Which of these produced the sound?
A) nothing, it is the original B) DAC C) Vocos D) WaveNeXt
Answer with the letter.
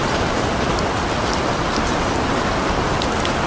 A